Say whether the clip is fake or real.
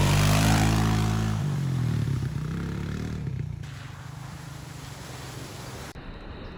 fake